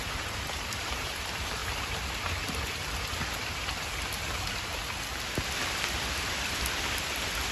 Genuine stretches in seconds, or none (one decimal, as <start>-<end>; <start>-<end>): 1.6-5.7